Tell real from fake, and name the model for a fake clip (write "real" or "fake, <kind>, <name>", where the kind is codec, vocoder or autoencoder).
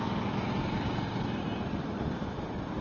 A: real